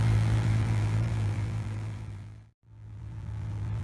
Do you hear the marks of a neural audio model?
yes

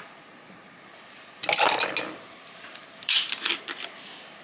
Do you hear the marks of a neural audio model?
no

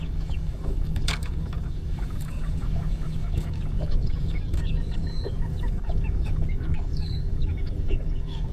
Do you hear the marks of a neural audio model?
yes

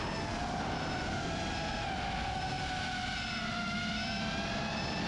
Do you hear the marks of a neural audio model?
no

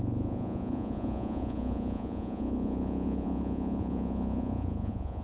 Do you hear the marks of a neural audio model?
yes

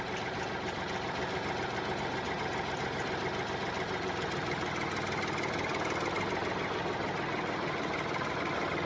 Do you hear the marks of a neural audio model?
no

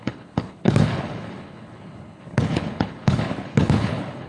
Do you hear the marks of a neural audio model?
yes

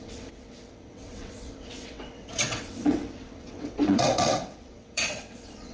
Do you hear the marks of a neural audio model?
yes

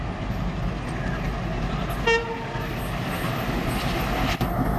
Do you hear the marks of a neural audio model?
no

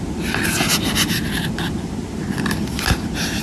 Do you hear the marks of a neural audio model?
no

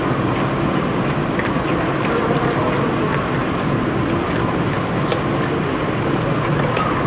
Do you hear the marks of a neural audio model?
no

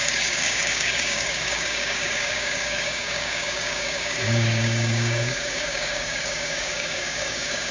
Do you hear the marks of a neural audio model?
yes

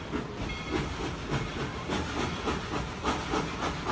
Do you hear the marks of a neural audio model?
no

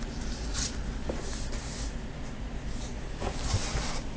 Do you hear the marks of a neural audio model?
no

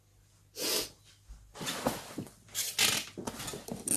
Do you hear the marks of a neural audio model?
no